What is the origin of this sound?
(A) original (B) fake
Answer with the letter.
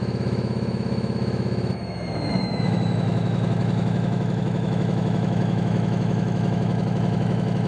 B